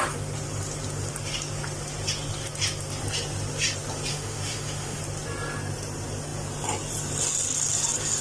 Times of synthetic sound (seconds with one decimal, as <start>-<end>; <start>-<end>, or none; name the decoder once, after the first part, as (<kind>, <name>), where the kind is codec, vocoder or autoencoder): 4.1-5.0 (autoencoder, DAC-VAE)